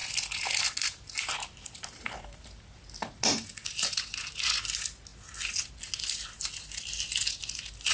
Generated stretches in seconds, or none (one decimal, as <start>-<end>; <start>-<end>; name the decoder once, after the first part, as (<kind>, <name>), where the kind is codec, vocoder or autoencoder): none